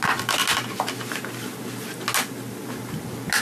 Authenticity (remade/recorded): recorded